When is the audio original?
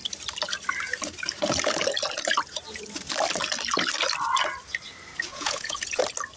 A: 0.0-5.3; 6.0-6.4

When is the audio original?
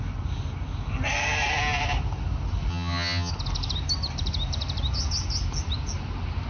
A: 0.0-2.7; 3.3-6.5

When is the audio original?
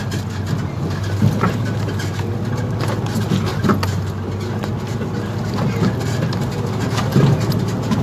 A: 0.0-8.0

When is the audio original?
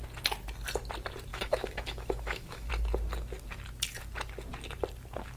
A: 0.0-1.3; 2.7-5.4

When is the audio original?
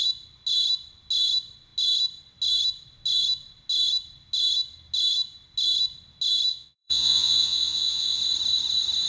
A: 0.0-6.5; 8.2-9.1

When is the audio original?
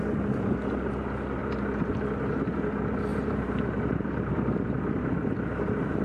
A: 0.0-1.4; 1.9-3.1; 4.5-6.0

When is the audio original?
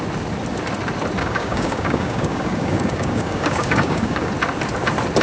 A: 0.0-1.2; 4.3-5.2